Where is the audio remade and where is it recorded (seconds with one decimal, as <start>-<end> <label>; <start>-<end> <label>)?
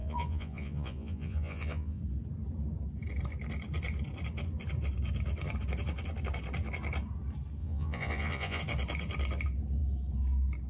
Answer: 0.0-2.0 remade; 2.0-7.6 recorded; 7.6-8.6 remade; 8.6-10.7 recorded